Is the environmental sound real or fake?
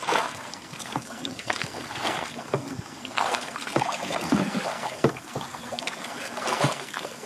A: fake